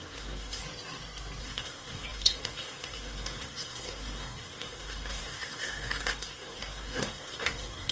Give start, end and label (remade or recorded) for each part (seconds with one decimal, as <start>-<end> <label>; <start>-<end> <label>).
0.0-0.6 remade; 0.6-1.4 recorded; 1.4-7.9 remade